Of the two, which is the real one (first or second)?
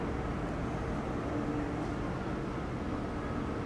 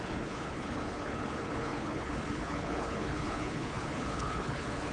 first